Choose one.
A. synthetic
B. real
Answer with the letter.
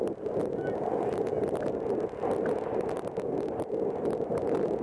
B